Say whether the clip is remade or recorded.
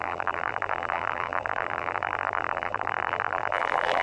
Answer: remade